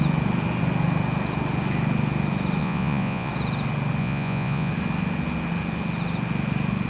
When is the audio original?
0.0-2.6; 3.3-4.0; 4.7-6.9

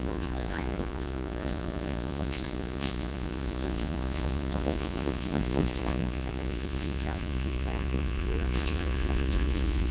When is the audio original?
none

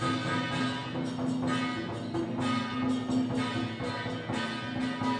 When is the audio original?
0.0-5.2

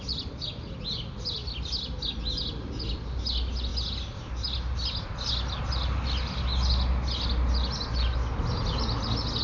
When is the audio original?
0.0-9.4